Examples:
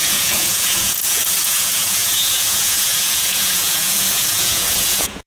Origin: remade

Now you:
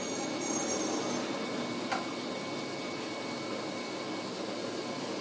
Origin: recorded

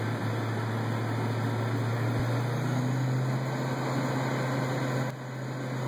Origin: recorded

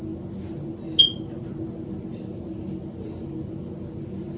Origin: recorded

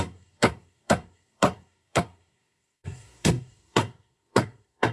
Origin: remade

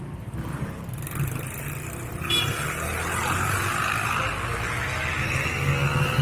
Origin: recorded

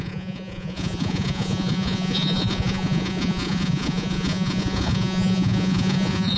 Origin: remade